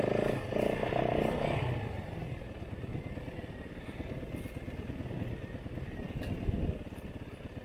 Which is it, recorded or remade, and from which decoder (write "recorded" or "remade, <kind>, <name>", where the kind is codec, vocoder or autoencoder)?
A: recorded